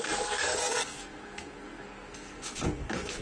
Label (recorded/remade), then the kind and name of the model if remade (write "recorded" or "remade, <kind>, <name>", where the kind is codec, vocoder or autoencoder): remade, codec, SNAC